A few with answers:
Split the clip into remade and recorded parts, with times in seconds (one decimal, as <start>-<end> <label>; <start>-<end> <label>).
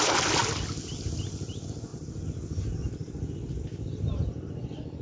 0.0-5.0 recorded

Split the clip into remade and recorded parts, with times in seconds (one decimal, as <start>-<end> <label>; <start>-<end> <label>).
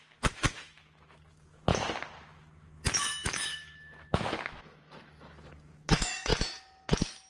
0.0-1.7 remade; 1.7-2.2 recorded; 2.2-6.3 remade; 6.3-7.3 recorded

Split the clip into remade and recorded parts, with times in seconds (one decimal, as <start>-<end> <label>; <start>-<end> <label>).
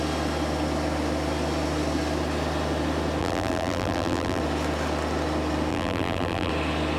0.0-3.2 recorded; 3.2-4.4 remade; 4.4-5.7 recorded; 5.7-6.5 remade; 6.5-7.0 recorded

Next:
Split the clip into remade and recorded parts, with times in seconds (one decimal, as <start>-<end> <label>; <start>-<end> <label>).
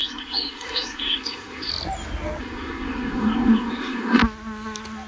0.0-1.7 remade; 1.7-2.4 recorded; 2.4-4.2 remade; 4.2-5.1 recorded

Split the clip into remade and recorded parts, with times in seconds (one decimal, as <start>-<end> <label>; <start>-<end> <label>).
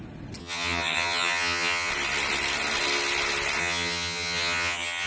0.0-0.4 recorded; 0.4-1.9 remade; 1.9-3.6 recorded; 3.6-5.1 remade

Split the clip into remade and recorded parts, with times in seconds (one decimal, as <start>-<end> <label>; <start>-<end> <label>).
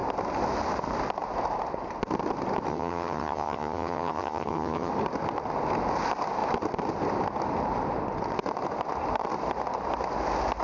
0.0-2.7 recorded; 2.7-4.9 remade; 4.9-10.6 recorded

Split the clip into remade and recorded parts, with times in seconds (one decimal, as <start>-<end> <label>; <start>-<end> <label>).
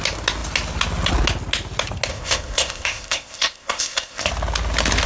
0.0-2.1 recorded; 2.1-4.3 remade; 4.3-5.1 recorded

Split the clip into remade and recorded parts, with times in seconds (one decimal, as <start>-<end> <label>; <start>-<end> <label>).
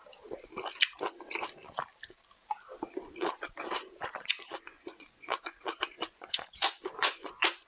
0.0-4.3 recorded; 4.3-7.7 remade